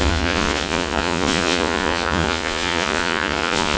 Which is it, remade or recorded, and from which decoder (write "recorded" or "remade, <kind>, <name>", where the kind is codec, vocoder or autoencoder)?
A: remade, vocoder, Vocos